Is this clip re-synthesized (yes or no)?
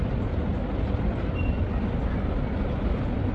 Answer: no